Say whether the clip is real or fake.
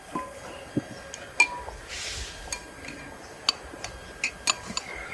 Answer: real